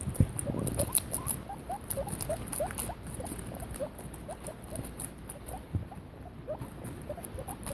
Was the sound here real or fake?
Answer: real